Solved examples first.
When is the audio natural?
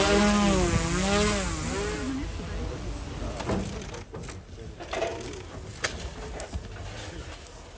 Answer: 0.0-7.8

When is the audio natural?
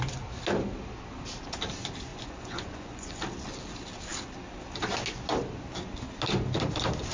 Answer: 0.0-2.1; 3.2-7.1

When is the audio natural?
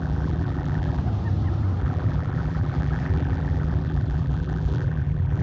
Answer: 1.0-1.8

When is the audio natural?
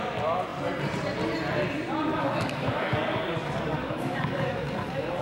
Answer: 0.0-2.1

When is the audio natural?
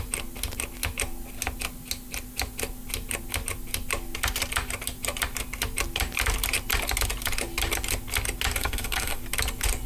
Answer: 0.0-8.6; 9.2-9.9